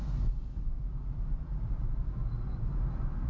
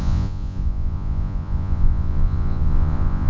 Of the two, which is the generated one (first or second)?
second